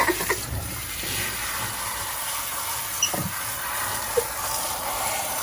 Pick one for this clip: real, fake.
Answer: fake